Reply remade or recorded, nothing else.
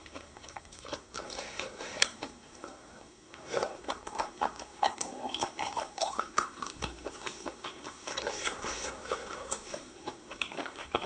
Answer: remade